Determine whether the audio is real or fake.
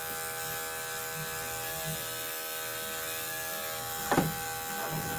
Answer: real